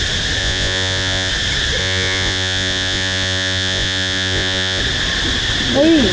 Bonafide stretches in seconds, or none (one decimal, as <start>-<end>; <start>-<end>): 0.0-0.4; 1.3-1.8; 4.8-6.1